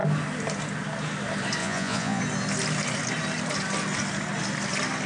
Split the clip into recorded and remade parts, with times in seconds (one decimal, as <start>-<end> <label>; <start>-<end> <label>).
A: 0.0-1.6 recorded; 1.6-2.2 remade; 2.2-5.1 recorded